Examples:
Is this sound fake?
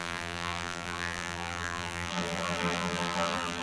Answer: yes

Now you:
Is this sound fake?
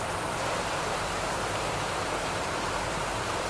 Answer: yes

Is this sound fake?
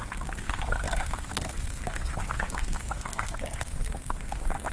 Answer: yes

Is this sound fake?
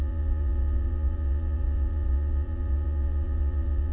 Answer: yes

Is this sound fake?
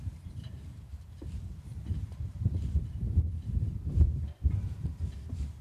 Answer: yes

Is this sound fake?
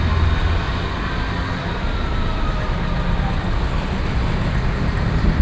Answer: no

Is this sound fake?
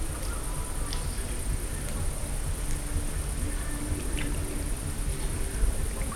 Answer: no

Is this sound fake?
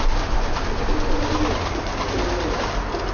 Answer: no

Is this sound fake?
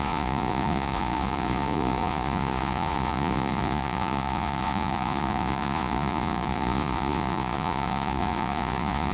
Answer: yes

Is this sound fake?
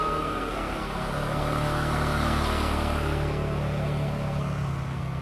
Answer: yes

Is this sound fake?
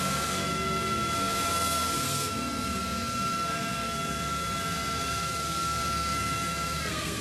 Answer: yes